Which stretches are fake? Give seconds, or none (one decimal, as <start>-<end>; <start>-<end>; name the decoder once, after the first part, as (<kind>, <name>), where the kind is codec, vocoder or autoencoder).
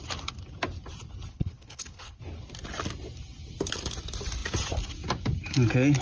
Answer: 1.3-2.2 (codec, HILCodec)